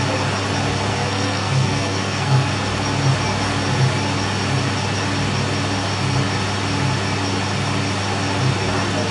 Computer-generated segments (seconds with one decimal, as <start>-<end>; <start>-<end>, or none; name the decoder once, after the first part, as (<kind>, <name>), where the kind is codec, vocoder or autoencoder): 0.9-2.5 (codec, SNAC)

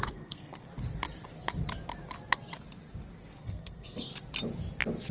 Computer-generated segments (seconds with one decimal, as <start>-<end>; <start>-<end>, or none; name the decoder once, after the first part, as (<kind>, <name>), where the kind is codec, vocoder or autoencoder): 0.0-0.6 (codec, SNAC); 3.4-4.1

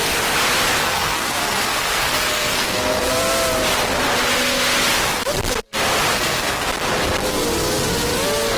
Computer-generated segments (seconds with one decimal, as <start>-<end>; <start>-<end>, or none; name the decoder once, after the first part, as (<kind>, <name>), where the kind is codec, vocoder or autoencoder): 0.8-3.1 (codec, SNAC); 6.1-6.6

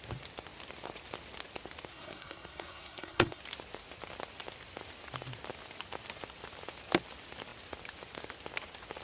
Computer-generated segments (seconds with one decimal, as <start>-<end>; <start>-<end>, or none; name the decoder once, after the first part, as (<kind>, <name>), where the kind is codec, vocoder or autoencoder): 1.9-3.4 (codec, SNAC)

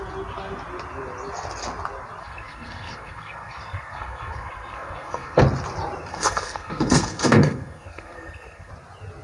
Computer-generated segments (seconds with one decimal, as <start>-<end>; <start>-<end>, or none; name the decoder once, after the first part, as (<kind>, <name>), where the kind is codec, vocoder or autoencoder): 2.2-5.4 (codec, SNAC); 6.1-8.7

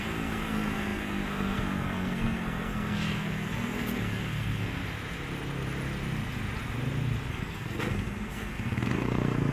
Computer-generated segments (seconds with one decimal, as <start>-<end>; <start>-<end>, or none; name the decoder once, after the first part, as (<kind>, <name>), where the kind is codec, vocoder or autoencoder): 0.0-4.8 (codec, SNAC); 7.3-9.5

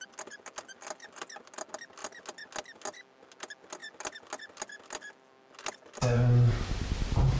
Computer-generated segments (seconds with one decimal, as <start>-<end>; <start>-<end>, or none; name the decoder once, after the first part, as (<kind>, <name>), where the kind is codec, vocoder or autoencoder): none

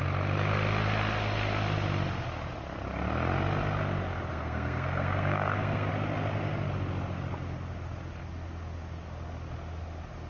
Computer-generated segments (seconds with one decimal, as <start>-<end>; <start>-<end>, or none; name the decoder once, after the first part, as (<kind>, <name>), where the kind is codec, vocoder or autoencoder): 4.3-5.9 (codec, SNAC)